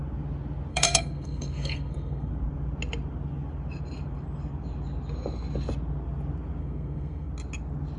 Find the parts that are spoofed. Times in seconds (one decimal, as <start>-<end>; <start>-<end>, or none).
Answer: 0.7-2.3; 6.6-7.3